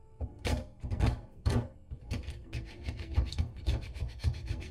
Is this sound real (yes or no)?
no